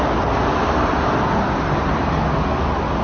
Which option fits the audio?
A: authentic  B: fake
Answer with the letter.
A